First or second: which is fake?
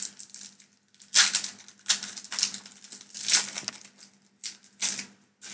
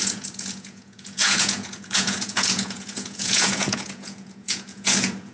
second